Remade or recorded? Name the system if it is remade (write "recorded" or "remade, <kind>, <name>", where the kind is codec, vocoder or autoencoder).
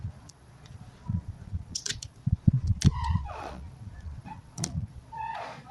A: remade, vocoder, Vocos